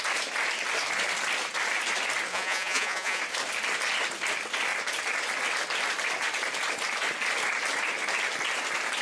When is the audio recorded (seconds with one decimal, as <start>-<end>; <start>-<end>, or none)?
0.0-2.3; 3.2-9.0